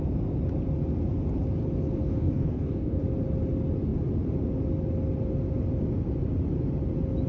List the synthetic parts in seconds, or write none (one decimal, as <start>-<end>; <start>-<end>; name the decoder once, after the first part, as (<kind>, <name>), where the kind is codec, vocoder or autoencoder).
2.0-3.0 (codec, DAC)

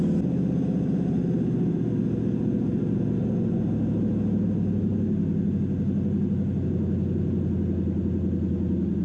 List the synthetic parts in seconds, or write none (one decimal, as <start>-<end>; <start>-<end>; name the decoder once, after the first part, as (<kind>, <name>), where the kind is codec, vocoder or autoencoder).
none